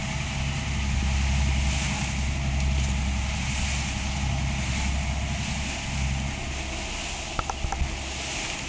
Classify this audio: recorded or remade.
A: recorded